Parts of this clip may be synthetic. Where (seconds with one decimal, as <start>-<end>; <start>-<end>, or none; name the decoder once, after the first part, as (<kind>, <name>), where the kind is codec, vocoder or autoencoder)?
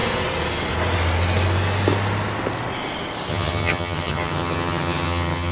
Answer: 3.3-5.5 (vocoder, HiFi-GAN)